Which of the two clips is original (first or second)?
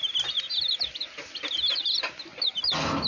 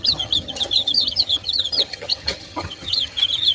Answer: first